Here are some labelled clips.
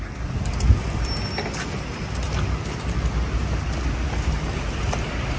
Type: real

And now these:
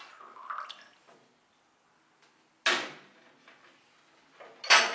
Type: real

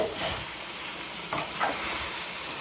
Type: fake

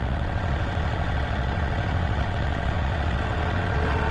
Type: fake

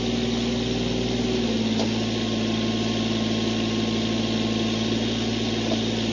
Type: real